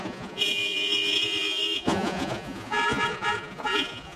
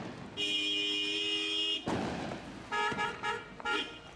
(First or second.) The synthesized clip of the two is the first